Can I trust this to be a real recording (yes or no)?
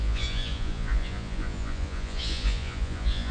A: no